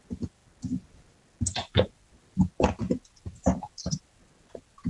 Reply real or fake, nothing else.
real